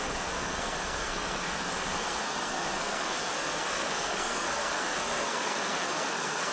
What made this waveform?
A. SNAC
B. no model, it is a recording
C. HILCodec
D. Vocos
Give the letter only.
A